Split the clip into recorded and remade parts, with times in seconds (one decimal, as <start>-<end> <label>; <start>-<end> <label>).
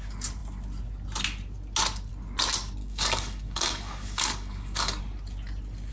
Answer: 0.0-2.8 recorded; 2.8-5.0 remade; 5.0-5.9 recorded